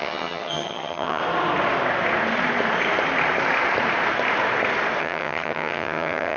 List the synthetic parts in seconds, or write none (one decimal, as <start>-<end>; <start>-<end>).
0.0-1.2; 5.0-6.4